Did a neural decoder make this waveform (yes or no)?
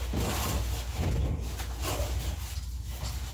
no